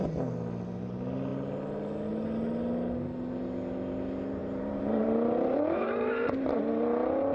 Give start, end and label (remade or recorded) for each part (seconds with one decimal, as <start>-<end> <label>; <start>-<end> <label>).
0.0-4.4 recorded; 4.4-6.6 remade; 6.6-7.3 recorded